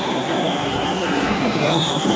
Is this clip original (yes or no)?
no